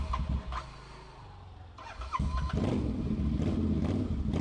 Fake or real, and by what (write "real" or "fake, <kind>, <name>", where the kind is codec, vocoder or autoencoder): real